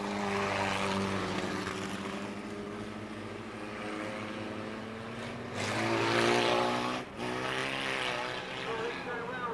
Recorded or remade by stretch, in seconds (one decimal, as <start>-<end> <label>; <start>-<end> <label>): 0.0-9.5 recorded